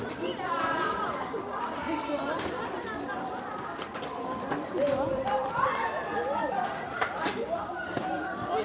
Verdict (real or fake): fake